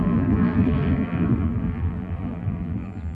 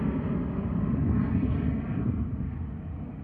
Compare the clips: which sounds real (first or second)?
second